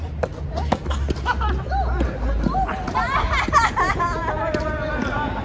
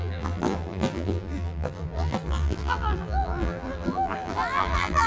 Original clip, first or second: first